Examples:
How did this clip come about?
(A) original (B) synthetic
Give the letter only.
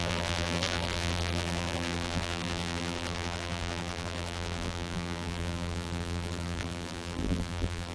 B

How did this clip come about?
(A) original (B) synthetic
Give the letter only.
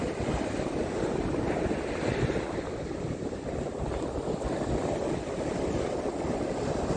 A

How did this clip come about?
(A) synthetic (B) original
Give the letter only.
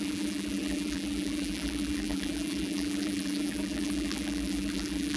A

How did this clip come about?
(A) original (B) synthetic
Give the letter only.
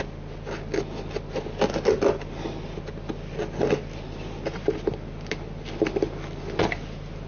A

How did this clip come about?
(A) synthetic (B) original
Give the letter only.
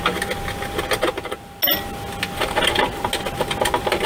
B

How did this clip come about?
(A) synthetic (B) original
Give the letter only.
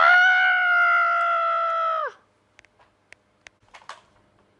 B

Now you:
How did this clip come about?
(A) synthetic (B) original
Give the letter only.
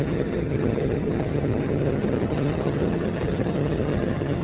A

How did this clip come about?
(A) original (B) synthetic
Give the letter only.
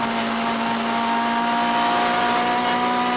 A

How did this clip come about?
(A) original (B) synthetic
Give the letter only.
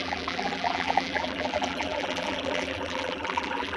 B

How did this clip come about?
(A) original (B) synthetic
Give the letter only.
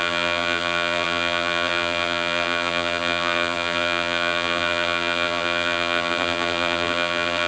B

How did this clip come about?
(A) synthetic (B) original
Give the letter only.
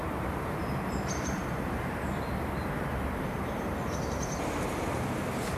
A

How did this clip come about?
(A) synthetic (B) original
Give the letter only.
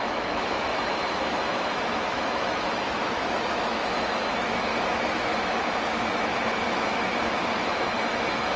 A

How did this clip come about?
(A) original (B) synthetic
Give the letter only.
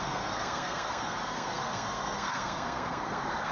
B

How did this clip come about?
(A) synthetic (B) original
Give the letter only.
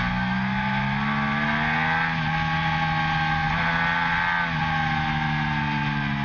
B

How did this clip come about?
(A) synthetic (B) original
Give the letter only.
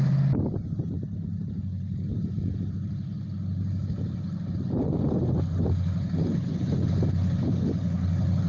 B